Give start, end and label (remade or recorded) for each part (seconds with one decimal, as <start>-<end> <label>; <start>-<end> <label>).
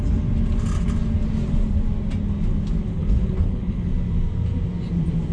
0.0-2.9 recorded; 2.9-3.9 remade; 3.9-5.3 recorded